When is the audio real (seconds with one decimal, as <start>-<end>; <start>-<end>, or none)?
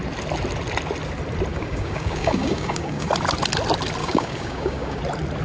0.0-1.5; 3.1-4.0; 5.0-5.4